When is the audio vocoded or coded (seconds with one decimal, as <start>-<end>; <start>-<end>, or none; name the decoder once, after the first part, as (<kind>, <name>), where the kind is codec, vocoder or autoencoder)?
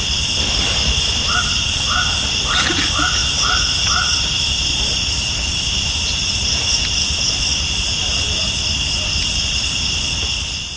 none